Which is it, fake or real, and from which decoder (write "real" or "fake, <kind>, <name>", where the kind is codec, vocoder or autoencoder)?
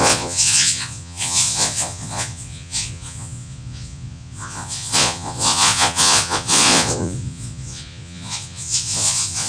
fake, vocoder, Vocos